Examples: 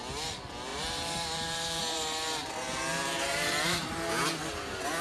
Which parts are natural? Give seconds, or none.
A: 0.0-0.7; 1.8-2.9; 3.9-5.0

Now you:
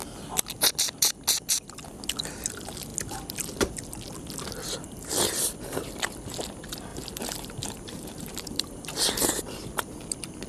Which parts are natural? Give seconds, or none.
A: 0.0-6.9; 9.3-10.5

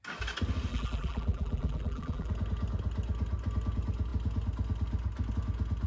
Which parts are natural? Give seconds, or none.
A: 0.0-0.7; 2.3-5.9